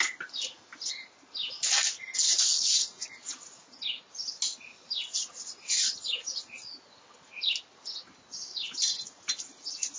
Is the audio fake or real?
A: real